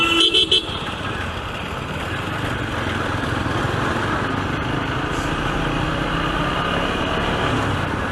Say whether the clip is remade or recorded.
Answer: recorded